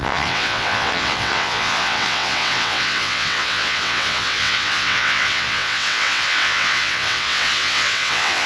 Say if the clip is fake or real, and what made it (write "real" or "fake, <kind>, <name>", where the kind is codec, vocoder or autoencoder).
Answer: fake, vocoder, WaveNeXt